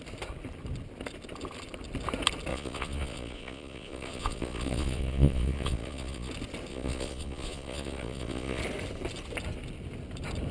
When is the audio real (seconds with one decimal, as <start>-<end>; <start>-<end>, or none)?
0.0-2.5; 6.3-6.7; 8.6-10.5